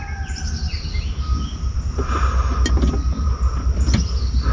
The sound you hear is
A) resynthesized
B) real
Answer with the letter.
B